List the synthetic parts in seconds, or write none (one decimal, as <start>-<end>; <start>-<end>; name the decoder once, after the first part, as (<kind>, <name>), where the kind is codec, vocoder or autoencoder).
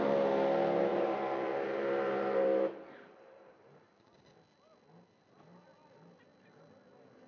0.9-4.3 (vocoder, BigVGAN v2)